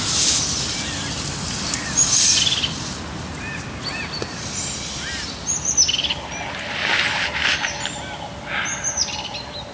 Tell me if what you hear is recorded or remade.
recorded